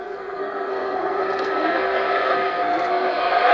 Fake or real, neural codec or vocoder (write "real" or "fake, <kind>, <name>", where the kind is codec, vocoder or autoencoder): fake, codec, SNAC